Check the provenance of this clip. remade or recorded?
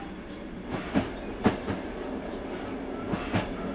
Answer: recorded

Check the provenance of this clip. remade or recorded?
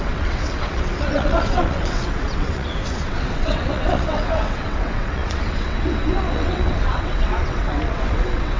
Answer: remade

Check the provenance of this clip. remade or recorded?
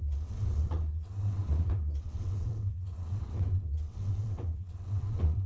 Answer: remade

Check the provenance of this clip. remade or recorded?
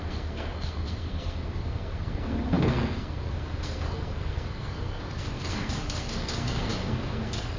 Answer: remade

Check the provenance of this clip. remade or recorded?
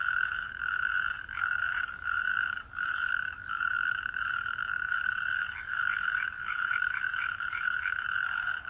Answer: remade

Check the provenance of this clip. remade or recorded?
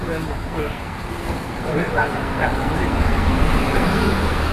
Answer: remade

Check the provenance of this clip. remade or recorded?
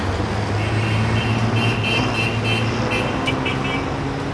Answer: recorded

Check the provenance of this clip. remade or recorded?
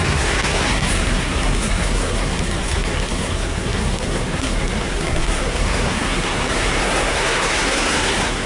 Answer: remade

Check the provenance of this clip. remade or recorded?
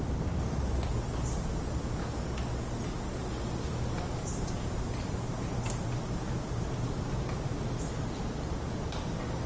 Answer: recorded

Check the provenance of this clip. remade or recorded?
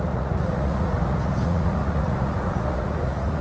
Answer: remade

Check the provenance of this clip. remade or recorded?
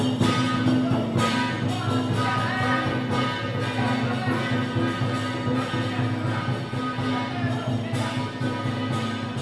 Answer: recorded